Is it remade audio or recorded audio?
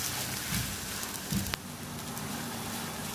recorded